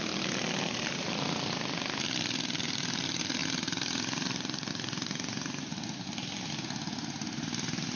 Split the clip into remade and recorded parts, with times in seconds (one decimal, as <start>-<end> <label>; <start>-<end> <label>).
0.0-8.0 recorded